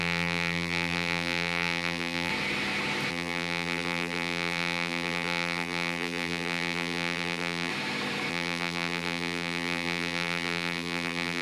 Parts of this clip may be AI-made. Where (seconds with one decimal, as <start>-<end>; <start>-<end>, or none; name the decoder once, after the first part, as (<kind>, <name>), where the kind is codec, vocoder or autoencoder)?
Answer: 0.0-2.3 (vocoder, BigVGAN v2); 3.1-7.7; 8.3-11.4

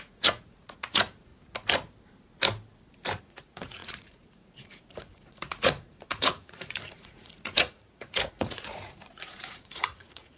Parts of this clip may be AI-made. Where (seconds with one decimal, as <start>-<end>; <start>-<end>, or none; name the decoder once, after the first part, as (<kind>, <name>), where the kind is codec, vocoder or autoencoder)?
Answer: 0.0-1.3 (vocoder, Vocos); 3.2-10.4